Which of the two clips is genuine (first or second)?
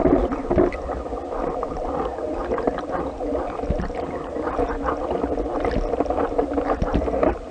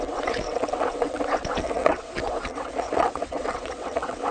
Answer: first